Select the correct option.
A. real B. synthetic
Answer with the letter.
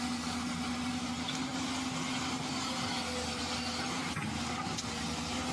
A